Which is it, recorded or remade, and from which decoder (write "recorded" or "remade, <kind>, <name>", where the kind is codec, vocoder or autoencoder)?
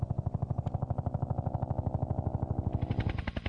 recorded